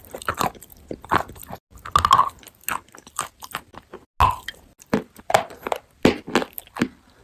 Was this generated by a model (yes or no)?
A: no